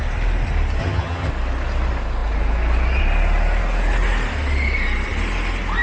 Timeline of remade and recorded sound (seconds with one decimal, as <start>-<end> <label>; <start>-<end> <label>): 0.0-0.8 recorded; 0.8-1.3 remade; 1.3-5.8 recorded